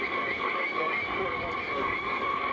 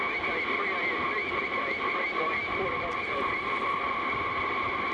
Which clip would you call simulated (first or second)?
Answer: first